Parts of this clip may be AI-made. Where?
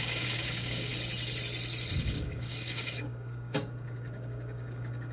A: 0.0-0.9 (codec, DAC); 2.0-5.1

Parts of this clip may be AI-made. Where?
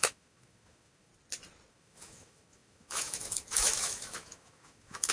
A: 0.0-1.1 (autoencoder, DAC-VAE); 1.7-5.1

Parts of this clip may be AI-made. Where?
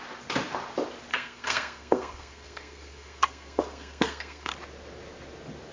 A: 1.1-4.5 (codec, SNAC)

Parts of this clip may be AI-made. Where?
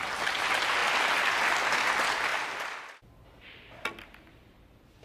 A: none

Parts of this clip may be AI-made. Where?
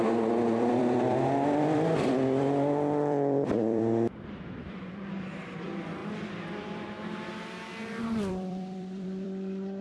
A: 0.0-6.0 (vocoder, BigVGAN v2); 8.0-9.8